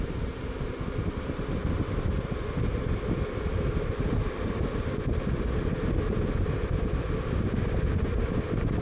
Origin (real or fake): real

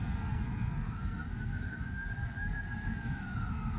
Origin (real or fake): fake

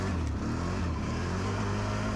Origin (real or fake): real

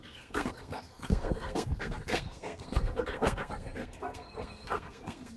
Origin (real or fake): fake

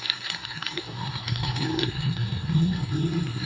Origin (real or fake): fake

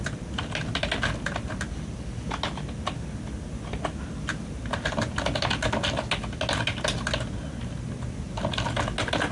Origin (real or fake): real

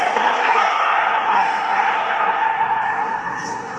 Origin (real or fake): fake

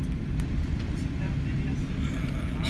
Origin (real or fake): real